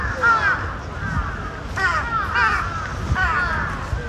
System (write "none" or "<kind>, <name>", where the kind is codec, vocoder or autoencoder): none